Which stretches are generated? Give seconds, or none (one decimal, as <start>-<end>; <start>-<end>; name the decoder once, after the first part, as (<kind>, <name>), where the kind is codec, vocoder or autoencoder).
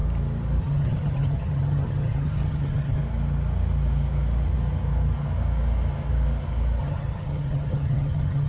0.6-3.0 (vocoder, HiFi-GAN); 6.8-8.5